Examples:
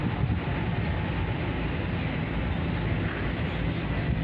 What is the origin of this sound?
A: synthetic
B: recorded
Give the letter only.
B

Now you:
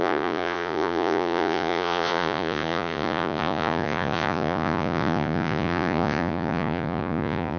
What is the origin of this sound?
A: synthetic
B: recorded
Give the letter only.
A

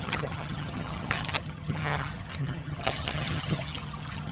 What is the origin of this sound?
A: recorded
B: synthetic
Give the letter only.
B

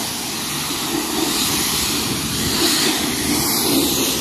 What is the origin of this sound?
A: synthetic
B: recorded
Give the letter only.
A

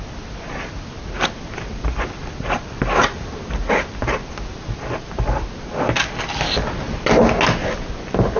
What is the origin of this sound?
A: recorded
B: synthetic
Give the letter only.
A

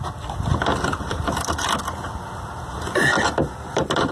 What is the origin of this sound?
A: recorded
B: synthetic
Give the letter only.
A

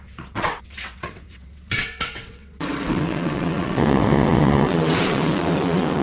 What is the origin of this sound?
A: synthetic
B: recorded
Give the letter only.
A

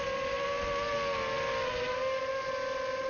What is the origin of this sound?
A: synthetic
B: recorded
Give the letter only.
B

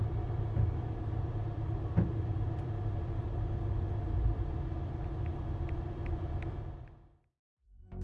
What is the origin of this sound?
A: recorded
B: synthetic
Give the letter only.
B